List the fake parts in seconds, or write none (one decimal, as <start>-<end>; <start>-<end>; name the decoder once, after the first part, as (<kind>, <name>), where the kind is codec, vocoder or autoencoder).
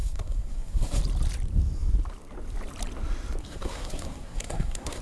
0.0-1.0 (codec, SNAC); 3.4-5.0